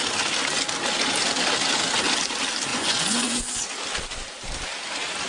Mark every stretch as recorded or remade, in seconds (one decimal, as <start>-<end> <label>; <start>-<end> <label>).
0.0-2.7 recorded; 2.7-3.6 remade; 3.6-5.3 recorded